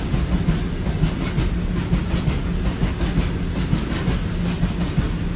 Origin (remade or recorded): recorded